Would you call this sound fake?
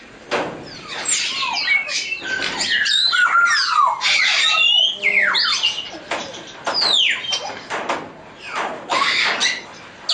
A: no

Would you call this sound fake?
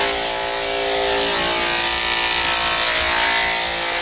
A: no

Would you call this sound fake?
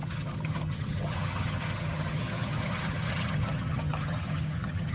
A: yes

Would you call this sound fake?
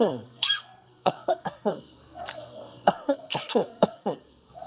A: yes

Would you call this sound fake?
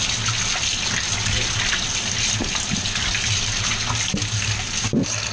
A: no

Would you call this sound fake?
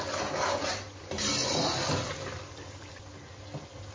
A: no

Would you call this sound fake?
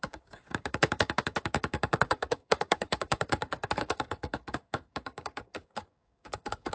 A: yes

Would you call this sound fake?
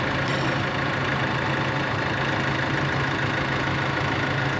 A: no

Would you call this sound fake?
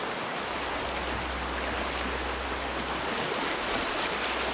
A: no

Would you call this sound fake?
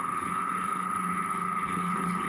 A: yes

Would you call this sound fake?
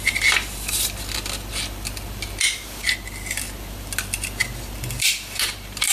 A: no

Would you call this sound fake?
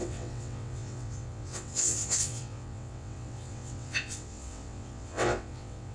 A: yes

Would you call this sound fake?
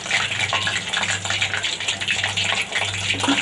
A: no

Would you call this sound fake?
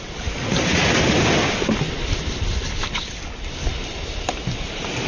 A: no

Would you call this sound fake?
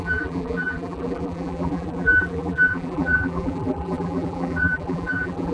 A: yes